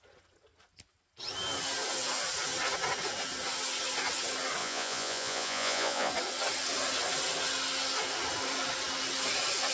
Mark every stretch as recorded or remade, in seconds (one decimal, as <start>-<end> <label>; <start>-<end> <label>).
0.0-4.6 recorded; 4.6-6.1 remade; 6.1-9.7 recorded